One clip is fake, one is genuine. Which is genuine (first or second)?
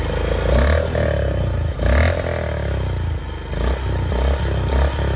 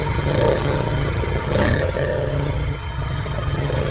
first